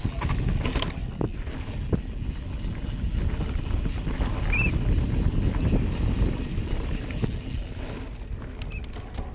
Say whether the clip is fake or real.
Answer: real